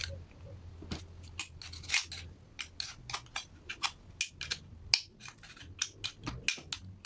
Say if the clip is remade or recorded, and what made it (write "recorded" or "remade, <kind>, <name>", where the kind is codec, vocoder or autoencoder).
recorded